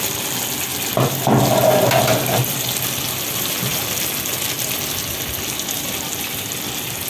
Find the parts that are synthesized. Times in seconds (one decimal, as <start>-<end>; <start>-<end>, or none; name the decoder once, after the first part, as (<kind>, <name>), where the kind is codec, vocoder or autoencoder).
none